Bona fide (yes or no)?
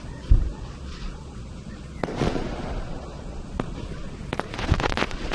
no